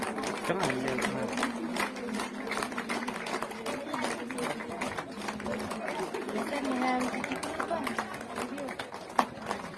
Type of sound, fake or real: real